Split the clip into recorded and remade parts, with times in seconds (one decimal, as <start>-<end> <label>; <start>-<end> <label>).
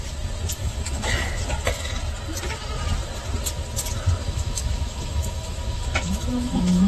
0.0-0.6 recorded; 0.6-1.4 remade; 1.4-4.2 recorded; 4.2-6.9 remade